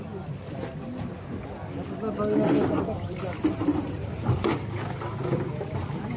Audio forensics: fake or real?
real